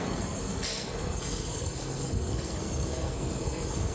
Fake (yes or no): yes